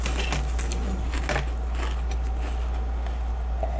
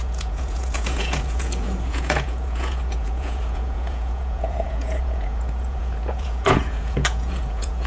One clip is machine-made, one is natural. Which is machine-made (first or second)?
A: second